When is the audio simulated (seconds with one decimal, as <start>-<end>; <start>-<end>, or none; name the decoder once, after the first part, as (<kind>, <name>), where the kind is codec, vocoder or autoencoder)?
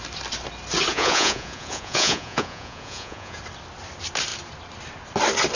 0.9-3.4 (vocoder, Vocos)